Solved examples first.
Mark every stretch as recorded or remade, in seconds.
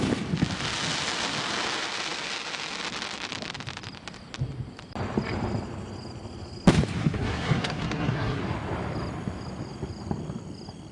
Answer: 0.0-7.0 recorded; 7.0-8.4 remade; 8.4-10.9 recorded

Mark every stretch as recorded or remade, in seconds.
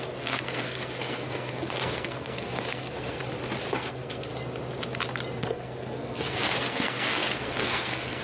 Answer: 0.0-3.2 remade; 3.2-3.7 recorded; 3.7-4.3 remade; 4.3-5.4 recorded; 5.4-8.2 remade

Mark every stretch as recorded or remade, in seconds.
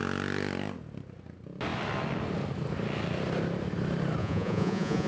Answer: 0.0-4.2 recorded; 4.2-5.1 remade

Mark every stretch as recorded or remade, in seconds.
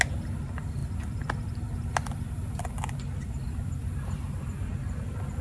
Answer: 0.0-5.4 recorded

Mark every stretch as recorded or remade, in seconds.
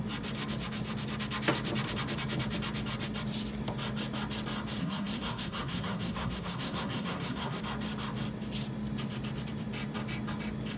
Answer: 0.0-4.8 recorded; 4.8-7.6 remade; 7.6-10.8 recorded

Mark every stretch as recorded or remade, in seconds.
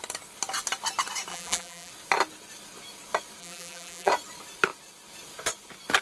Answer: 0.0-1.3 recorded; 1.3-1.9 remade; 1.9-3.4 recorded; 3.4-4.1 remade; 4.1-6.0 recorded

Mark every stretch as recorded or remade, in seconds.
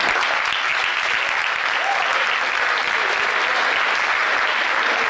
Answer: 0.0-5.1 recorded